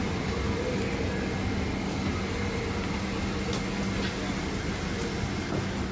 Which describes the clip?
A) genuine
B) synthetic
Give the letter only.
A